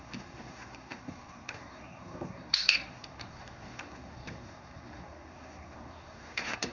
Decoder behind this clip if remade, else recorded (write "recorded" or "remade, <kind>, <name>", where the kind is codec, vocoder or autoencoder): remade, codec, SNAC